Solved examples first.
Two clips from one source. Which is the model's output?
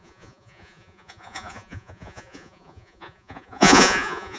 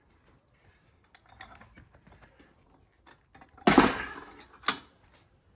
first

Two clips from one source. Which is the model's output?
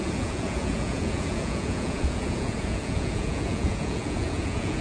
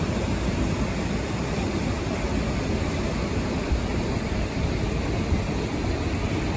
first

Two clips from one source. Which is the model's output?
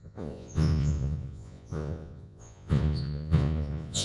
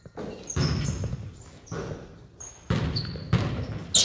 first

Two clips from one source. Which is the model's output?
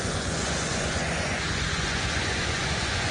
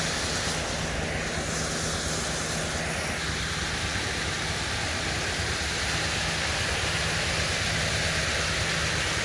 first